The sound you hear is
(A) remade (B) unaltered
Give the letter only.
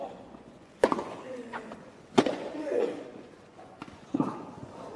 A